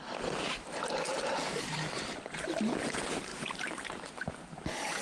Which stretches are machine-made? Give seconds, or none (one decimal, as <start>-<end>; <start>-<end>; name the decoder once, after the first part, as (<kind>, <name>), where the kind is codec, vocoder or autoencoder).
1.4-2.0 (vocoder, BigVGAN v2); 3.3-5.0